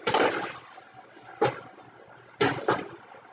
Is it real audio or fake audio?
real